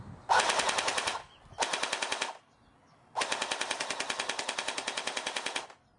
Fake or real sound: real